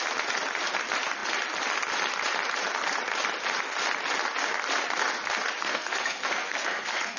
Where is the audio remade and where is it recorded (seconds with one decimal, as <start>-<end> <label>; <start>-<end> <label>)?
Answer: 0.0-5.6 recorded; 5.6-7.2 remade